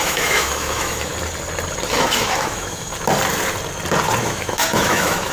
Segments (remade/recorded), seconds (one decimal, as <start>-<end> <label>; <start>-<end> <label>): 0.0-1.1 remade; 1.1-1.9 recorded; 1.9-2.9 remade; 2.9-4.2 recorded; 4.2-5.3 remade

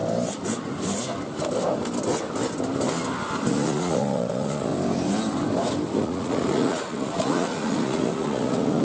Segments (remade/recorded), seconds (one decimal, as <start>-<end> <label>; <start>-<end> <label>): 0.0-3.5 recorded; 3.5-4.7 remade; 4.7-6.0 recorded; 6.0-8.8 remade

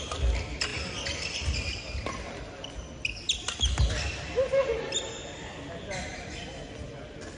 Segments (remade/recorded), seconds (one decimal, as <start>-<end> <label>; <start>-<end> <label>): 0.0-7.4 recorded

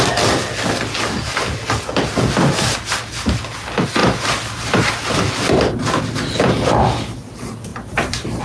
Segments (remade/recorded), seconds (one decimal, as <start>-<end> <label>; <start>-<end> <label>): 0.0-4.0 recorded; 4.0-4.9 remade; 4.9-7.7 recorded; 7.7-8.4 remade

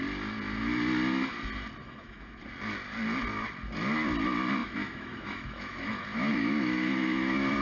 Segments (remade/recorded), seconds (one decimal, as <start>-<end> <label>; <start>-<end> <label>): 0.0-1.8 recorded; 1.8-2.4 remade; 2.4-4.6 recorded; 4.6-7.6 remade

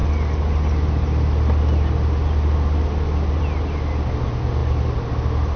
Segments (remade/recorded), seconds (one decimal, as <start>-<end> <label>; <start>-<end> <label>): 0.0-5.6 recorded

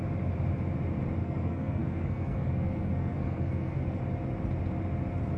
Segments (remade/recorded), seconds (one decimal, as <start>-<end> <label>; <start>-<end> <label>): 0.0-1.2 recorded; 1.2-4.0 remade; 4.0-5.4 recorded

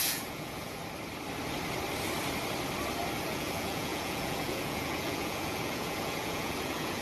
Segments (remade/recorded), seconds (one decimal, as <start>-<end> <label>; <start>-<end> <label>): 0.0-0.8 remade; 0.8-3.2 recorded; 3.2-7.0 remade